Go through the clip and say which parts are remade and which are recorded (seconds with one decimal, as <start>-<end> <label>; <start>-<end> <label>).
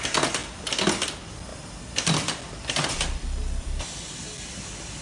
0.0-5.0 recorded